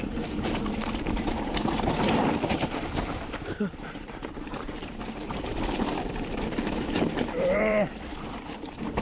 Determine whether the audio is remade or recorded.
remade